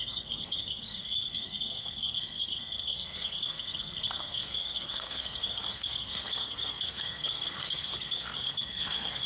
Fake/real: fake